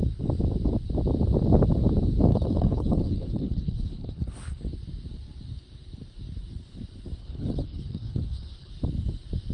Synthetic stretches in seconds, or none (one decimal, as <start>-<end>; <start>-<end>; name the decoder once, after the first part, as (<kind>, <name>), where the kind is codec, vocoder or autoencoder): 2.3-4.6 (codec, HILCodec); 7.2-8.7